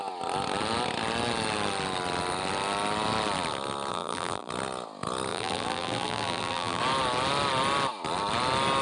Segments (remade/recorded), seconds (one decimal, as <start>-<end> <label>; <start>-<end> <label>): 0.0-3.9 recorded; 3.9-4.5 remade; 4.5-5.3 recorded; 5.3-6.8 remade; 6.8-8.8 recorded